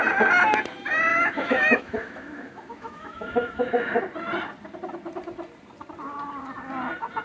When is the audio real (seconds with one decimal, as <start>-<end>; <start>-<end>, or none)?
0.0-1.1; 4.0-7.2